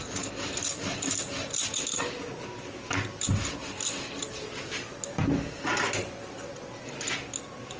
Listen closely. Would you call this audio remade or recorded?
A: recorded